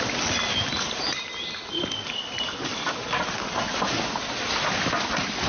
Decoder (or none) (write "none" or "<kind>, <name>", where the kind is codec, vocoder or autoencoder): none